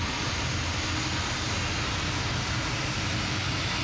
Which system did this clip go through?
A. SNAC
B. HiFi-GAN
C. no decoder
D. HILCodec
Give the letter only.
C